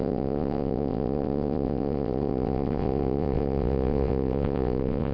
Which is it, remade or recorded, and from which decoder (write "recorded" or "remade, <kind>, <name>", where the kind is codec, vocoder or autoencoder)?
remade, vocoder, WaveNeXt